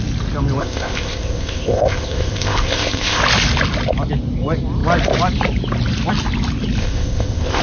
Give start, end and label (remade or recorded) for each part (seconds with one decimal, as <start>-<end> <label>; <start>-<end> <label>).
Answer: 0.0-0.6 recorded; 0.6-3.2 remade; 3.2-6.8 recorded; 6.8-7.6 remade